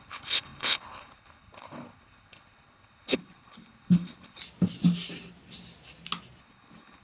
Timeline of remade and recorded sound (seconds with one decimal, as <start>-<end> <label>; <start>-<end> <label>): 0.0-4.4 remade; 4.4-6.4 recorded; 6.4-7.0 remade